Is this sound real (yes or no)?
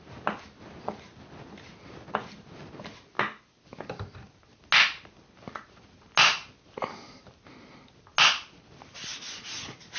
yes